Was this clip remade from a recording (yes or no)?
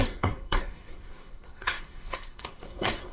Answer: yes